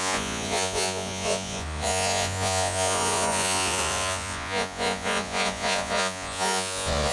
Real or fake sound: fake